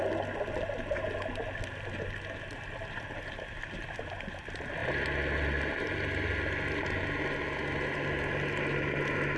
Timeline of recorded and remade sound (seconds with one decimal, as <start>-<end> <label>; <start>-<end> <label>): 0.0-9.4 recorded